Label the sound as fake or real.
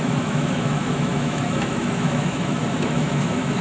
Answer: fake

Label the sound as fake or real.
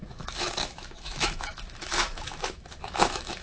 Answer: fake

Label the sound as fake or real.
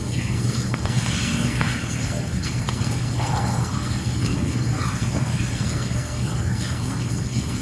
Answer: fake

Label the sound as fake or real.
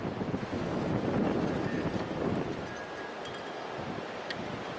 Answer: real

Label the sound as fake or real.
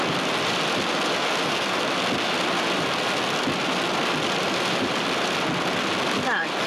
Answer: real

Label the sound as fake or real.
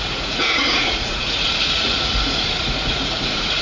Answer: fake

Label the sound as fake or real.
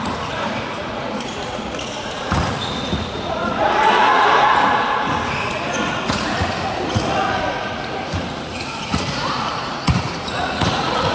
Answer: fake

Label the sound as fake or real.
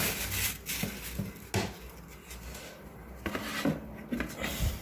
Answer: real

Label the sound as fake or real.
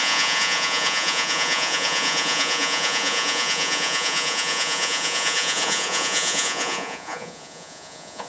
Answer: fake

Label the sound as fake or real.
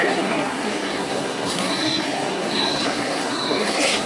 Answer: fake